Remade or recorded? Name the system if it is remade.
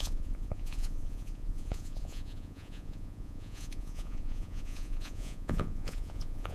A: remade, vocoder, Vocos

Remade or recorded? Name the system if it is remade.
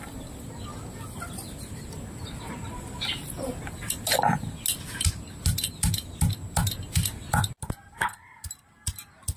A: recorded